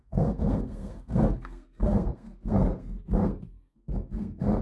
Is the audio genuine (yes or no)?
no